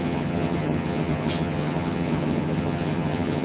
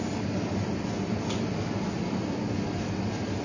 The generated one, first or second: first